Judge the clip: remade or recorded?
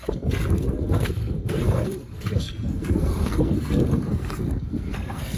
remade